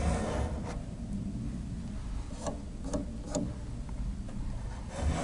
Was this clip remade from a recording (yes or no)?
no